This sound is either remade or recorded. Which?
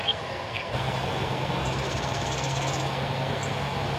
remade